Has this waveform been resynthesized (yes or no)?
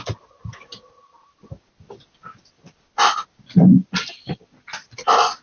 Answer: no